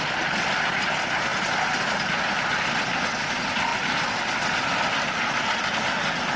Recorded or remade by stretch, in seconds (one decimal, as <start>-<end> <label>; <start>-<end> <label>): 0.0-6.4 recorded